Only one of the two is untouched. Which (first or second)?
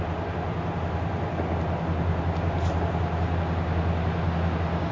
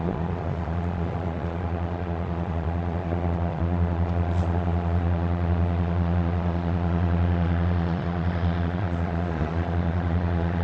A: first